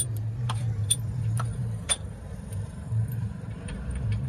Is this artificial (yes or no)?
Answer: yes